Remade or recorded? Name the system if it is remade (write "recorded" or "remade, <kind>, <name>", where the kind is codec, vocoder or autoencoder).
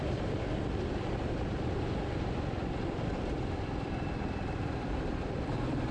remade, vocoder, BigVGAN v2